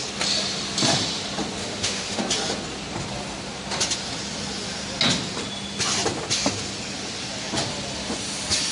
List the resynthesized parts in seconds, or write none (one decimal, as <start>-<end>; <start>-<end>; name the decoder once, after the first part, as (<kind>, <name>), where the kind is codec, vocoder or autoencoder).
1.6-2.2 (autoencoder, DAC-VAE)